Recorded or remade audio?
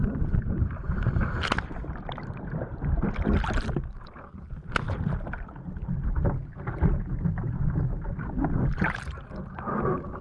recorded